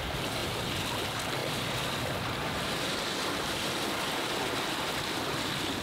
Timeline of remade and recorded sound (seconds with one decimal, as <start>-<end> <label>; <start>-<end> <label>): 0.0-5.8 recorded

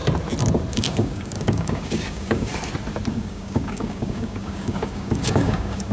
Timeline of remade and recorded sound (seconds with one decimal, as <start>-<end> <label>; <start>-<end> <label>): 0.0-0.7 recorded; 0.7-2.5 remade; 2.5-3.1 recorded; 3.1-5.9 remade

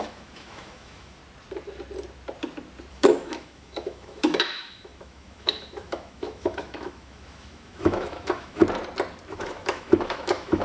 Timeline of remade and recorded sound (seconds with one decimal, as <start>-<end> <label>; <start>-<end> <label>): 0.0-1.2 remade; 1.2-2.9 recorded; 2.9-8.6 remade; 8.6-9.3 recorded; 9.3-10.6 remade

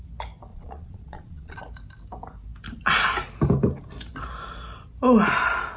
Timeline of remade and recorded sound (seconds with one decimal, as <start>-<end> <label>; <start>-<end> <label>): 0.0-0.5 recorded; 0.5-1.6 remade; 1.6-5.8 recorded

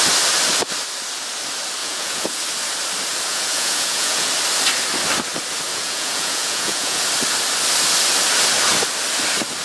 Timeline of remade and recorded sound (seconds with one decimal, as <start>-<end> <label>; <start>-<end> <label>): 0.0-1.8 recorded; 1.8-2.4 remade; 2.4-3.3 recorded; 3.3-4.3 remade; 4.3-5.7 recorded; 5.7-7.0 remade; 7.0-9.6 recorded

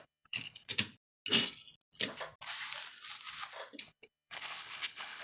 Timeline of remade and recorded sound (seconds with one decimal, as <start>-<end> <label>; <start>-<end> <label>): 0.0-0.7 remade; 0.7-3.8 recorded; 3.8-5.2 remade

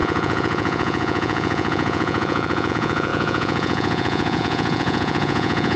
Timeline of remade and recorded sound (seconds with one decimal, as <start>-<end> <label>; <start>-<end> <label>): 0.0-5.8 remade